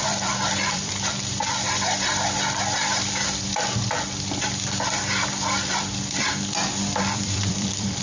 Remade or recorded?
remade